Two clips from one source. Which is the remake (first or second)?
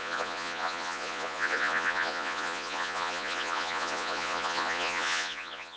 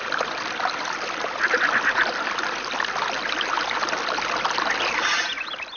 first